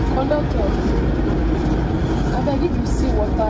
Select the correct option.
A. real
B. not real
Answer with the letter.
A